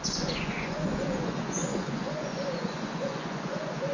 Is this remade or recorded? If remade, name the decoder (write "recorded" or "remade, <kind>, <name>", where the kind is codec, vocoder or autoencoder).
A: remade, vocoder, Vocos